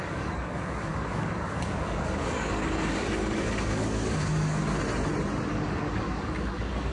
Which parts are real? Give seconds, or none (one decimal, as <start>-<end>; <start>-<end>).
4.6-5.5